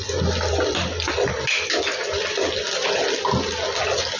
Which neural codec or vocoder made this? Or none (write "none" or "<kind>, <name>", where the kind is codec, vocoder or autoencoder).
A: none